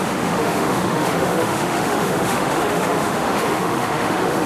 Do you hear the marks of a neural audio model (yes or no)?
yes